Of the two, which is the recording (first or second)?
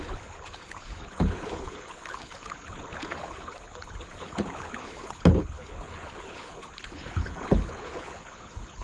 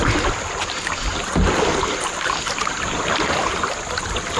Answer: second